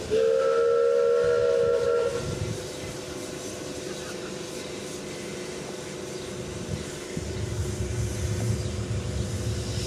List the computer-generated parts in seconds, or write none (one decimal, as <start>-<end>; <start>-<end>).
none